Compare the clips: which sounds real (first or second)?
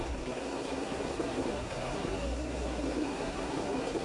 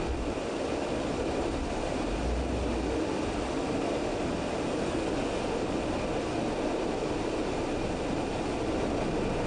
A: second